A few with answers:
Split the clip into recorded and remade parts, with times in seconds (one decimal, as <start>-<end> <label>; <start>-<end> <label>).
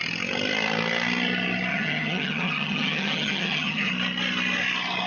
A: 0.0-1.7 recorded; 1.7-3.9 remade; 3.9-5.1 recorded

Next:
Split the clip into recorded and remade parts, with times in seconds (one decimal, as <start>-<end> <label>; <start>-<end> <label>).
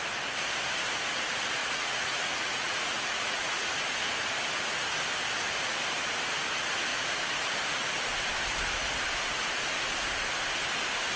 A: 0.0-1.6 recorded; 1.6-3.7 remade; 3.7-11.2 recorded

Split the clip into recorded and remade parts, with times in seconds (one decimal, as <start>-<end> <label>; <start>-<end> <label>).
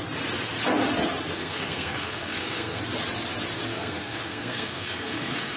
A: 0.0-1.4 recorded; 1.4-2.8 remade; 2.8-3.7 recorded; 3.7-5.6 remade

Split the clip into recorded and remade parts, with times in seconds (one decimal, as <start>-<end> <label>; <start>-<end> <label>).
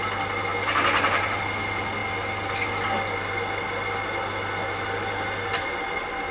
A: 0.0-6.3 recorded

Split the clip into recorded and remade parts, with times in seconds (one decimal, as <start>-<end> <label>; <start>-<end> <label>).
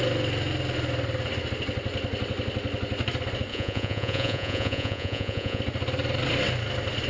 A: 0.0-3.5 recorded; 3.5-5.6 remade; 5.6-7.1 recorded